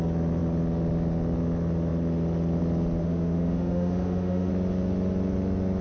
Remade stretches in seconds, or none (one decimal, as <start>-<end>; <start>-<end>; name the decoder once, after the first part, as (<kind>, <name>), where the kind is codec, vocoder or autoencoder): 3.0-4.5 (autoencoder, DAC-VAE)